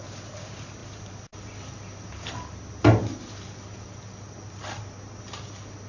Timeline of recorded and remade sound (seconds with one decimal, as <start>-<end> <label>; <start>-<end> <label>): 0.0-5.9 recorded